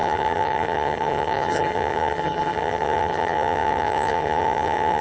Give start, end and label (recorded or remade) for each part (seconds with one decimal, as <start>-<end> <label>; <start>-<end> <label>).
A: 0.0-5.0 remade